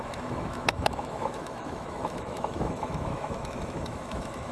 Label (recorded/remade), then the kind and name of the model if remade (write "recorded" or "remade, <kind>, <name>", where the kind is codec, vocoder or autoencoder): remade, autoencoder, DAC-VAE